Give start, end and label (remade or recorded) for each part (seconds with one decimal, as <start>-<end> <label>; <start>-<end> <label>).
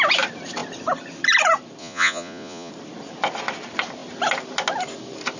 0.0-1.8 recorded; 1.8-2.7 remade; 2.7-5.4 recorded